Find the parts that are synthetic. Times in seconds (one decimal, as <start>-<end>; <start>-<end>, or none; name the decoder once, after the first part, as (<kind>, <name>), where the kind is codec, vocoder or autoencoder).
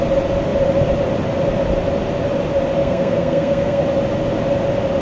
2.8-3.8 (codec, SNAC)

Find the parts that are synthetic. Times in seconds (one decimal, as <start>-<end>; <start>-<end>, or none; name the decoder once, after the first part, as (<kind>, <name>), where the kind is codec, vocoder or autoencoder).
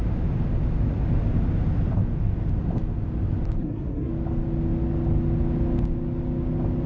3.6-4.1 (codec, SNAC)